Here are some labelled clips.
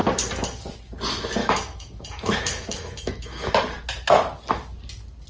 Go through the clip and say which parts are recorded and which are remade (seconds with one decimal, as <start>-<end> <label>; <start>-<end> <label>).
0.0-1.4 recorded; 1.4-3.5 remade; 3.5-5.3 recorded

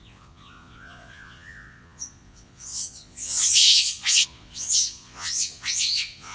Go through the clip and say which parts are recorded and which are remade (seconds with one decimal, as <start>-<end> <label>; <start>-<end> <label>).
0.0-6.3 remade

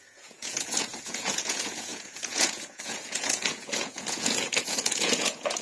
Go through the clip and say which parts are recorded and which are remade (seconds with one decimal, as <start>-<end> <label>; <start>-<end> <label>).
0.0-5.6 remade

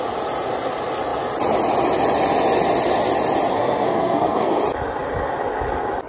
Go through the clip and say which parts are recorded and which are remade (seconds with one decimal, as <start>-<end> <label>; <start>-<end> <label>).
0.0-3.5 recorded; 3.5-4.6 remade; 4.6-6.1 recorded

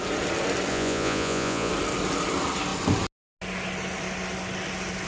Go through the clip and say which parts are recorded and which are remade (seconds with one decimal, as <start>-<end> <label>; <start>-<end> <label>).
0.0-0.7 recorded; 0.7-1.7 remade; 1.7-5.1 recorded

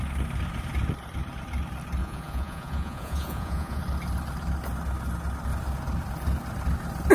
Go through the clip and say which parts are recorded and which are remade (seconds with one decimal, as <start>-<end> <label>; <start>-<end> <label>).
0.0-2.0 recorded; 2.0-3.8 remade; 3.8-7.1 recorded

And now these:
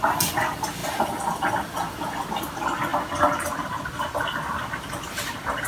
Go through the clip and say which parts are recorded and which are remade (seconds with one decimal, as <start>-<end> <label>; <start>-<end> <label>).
0.0-5.7 recorded